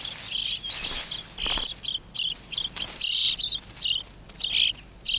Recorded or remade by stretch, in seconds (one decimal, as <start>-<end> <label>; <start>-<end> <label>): 0.0-5.2 recorded